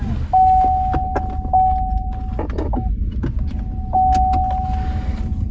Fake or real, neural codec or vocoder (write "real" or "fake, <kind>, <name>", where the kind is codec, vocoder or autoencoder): real